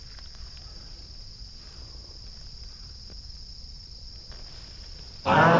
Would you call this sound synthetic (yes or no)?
no